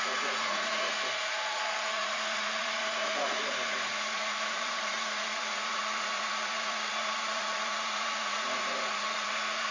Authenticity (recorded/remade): remade